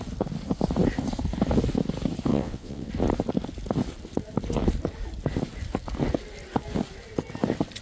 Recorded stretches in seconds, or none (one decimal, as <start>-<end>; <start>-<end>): 0.0-2.3; 2.9-7.8